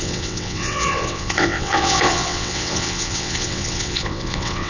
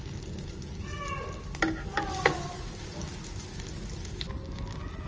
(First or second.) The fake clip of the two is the first